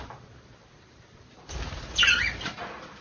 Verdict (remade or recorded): remade